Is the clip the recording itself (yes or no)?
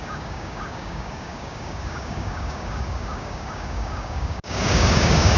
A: no